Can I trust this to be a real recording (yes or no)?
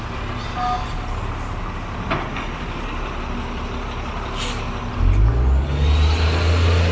yes